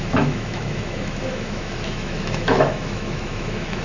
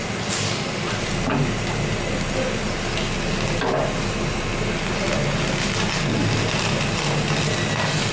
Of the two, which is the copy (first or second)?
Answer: first